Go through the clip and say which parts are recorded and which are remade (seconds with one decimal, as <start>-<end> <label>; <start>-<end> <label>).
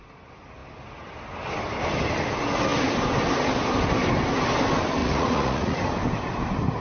0.0-5.0 recorded; 5.0-5.8 remade; 5.8-6.8 recorded